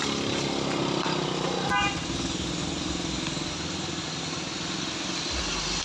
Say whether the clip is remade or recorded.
recorded